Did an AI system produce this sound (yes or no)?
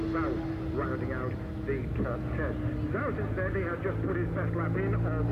no